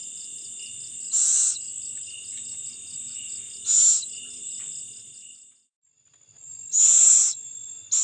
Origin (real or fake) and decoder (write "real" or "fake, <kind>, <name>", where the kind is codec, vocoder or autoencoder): real